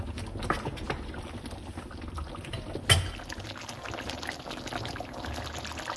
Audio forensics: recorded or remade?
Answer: recorded